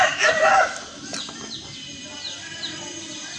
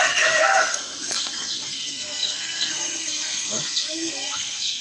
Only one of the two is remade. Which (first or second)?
second